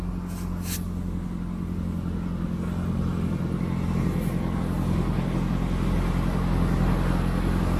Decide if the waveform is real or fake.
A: real